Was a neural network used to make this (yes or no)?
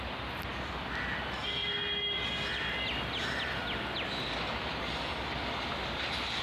no